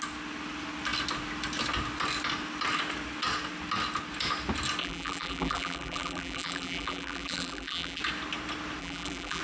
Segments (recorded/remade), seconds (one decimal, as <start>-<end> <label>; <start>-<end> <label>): 0.0-4.8 recorded; 4.8-8.0 remade; 8.0-8.8 recorded; 8.8-9.4 remade